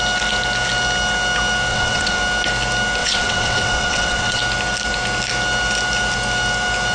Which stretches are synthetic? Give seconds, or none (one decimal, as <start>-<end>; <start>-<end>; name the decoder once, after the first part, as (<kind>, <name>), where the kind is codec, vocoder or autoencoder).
1.7-2.2 (vocoder, WaveNeXt); 3.0-4.4